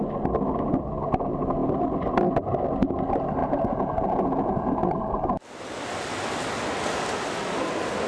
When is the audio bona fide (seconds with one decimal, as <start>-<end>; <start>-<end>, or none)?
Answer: 0.0-3.4; 5.0-8.1

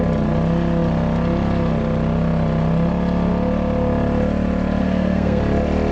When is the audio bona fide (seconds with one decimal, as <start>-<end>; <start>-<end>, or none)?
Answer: 0.0-4.8; 5.4-5.9

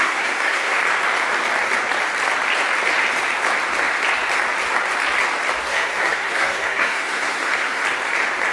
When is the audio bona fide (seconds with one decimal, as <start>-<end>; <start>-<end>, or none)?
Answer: 0.8-5.6; 7.8-8.5

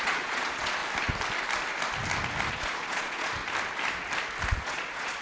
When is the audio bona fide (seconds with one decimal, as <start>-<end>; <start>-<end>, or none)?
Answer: 0.8-2.5; 3.4-4.5